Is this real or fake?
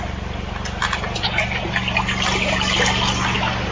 real